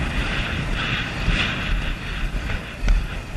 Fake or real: real